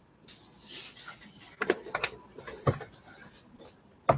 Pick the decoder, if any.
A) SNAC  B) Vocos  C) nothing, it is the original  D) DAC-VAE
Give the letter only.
C